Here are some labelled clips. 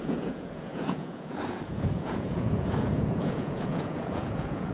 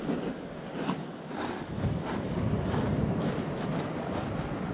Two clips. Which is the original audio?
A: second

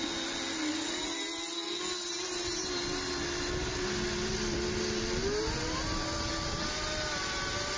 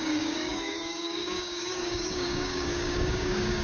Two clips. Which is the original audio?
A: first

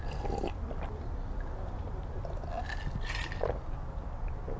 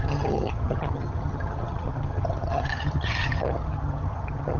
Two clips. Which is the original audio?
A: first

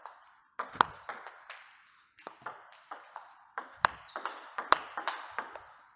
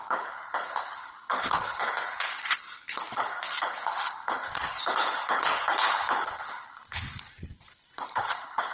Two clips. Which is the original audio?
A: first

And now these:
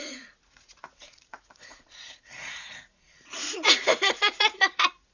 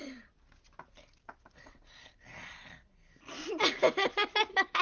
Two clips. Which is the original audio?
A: second